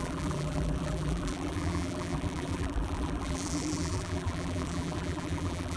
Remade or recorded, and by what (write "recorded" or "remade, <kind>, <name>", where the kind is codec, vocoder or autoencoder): remade, vocoder, BigVGAN v2